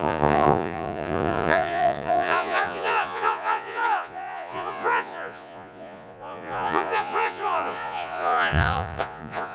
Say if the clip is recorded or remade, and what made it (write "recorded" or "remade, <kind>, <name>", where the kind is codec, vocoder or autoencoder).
remade, vocoder, Vocos